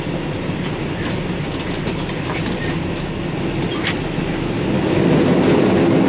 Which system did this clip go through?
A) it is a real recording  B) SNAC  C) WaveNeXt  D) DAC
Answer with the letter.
A